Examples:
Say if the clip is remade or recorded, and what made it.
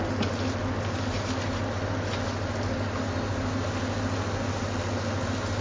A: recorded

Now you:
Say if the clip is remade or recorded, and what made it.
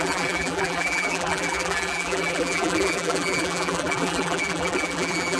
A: remade, vocoder, BigVGAN v2